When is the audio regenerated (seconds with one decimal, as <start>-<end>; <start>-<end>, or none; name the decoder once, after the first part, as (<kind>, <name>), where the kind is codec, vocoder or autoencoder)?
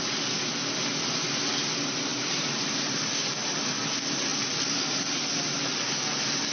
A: 2.1-3.0 (vocoder, BigVGAN v2)